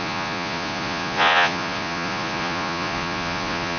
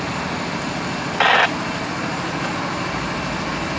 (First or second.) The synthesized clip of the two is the first